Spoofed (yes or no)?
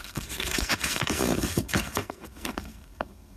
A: yes